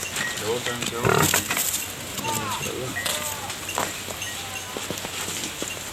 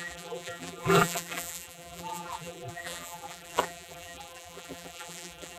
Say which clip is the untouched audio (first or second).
first